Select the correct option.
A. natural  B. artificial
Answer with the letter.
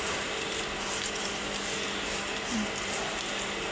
A